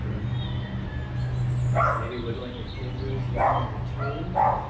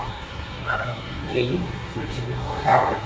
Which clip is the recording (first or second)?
first